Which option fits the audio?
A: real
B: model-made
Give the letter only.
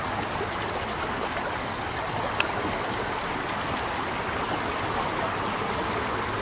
A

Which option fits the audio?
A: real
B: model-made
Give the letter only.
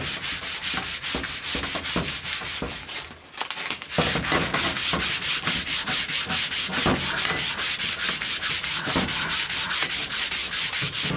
A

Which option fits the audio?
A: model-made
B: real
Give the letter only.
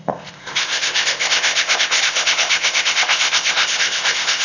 A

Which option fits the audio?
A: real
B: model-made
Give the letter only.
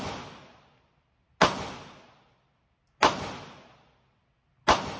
A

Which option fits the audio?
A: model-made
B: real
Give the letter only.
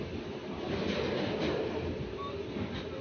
B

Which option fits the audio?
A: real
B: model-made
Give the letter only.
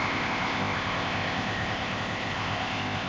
B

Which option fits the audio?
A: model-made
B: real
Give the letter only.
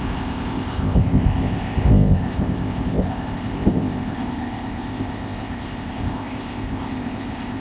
A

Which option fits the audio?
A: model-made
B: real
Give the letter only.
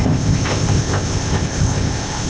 A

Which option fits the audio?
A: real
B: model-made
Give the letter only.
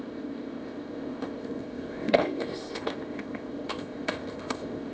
B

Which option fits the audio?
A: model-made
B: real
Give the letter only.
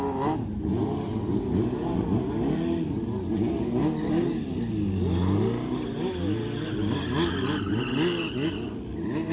B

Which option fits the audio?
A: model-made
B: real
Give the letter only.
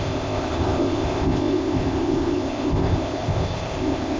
A